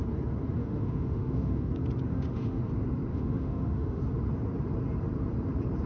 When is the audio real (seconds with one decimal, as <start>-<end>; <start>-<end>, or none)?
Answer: 0.0-0.6; 1.7-2.1; 2.6-3.1; 4.0-5.9